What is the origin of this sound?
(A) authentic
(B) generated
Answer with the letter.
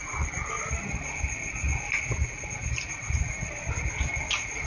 A